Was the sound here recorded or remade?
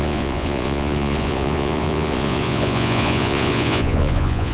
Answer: remade